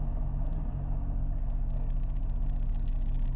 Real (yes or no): yes